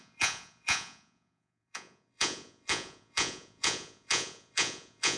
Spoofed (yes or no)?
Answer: yes